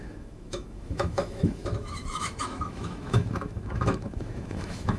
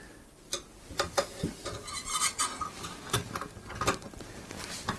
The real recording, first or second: second